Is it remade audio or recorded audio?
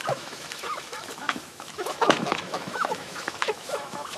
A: remade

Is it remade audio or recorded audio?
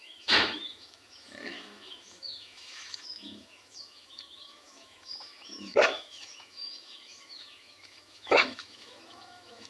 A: remade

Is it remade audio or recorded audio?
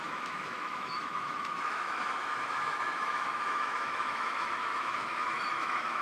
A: remade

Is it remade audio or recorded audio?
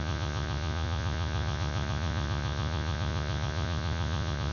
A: remade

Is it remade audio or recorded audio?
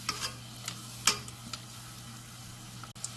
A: recorded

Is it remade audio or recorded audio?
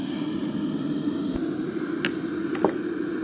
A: recorded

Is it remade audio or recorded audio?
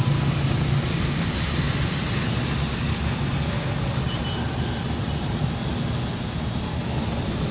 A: recorded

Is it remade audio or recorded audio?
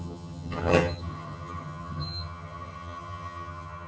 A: remade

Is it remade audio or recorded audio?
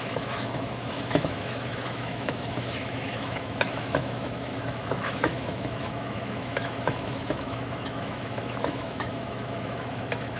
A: remade